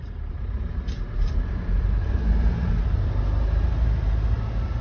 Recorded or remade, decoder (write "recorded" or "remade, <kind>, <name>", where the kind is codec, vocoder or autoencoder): remade, vocoder, BigVGAN v2